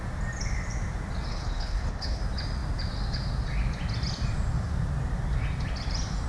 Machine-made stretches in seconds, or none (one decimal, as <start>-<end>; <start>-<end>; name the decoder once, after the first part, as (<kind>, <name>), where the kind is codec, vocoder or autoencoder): 1.3-2.2 (codec, HILCodec)